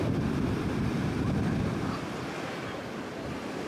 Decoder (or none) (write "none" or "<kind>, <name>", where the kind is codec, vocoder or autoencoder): none